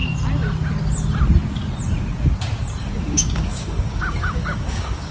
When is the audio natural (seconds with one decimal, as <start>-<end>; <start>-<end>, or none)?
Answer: 0.0-2.8